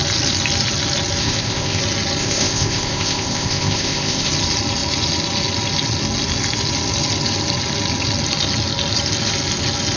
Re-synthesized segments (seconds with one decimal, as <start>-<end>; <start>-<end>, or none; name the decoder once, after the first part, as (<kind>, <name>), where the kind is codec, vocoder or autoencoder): 1.2-1.8 (codec, ZipCodec); 2.2-4.3